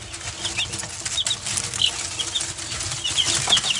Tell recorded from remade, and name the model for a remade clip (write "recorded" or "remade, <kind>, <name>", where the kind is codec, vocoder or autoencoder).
recorded